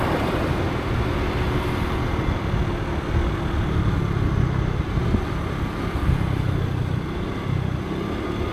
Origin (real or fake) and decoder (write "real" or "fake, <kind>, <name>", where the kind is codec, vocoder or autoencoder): real